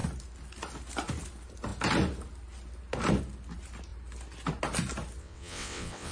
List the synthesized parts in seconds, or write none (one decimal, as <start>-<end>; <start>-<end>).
5.2-6.1